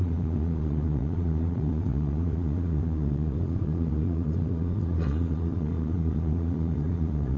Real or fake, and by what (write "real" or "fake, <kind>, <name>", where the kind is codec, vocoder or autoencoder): fake, vocoder, Vocos